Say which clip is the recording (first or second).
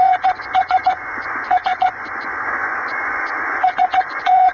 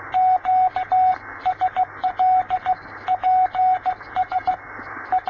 second